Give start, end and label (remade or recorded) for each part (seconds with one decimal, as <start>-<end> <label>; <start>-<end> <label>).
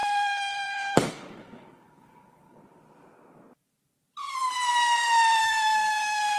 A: 0.0-2.6 remade; 2.6-5.4 recorded; 5.4-6.4 remade